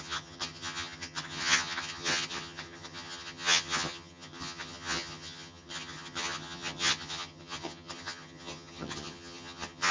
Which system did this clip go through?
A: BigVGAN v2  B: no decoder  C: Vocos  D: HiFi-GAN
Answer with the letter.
D